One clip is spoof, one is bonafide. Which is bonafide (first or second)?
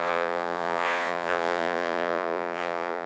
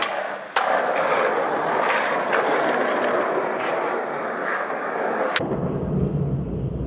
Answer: second